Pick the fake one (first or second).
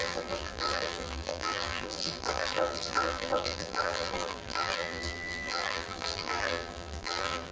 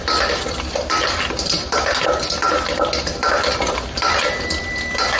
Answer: first